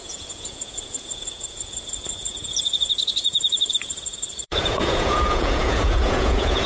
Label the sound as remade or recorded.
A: remade